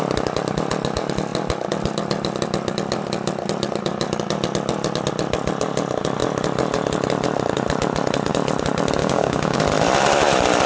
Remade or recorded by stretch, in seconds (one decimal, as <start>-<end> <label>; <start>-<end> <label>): 0.0-9.0 recorded; 9.0-9.6 remade; 9.6-10.7 recorded